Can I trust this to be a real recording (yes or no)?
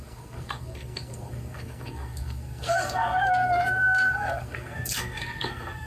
no